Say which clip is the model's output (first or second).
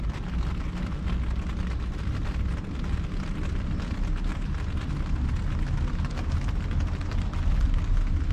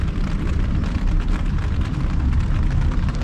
second